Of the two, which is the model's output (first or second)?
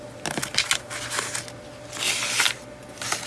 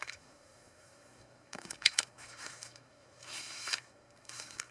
second